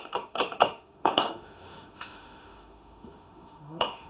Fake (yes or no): yes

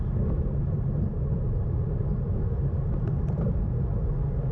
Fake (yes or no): no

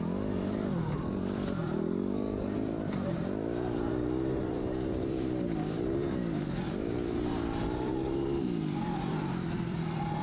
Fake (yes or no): yes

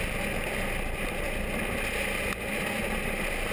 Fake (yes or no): no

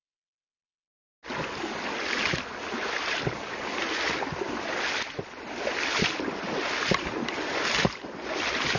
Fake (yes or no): no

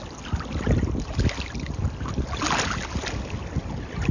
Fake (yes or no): no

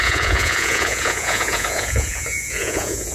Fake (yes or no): yes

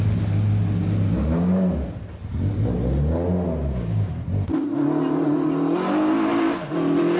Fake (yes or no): no